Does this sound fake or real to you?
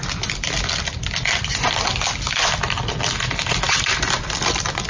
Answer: real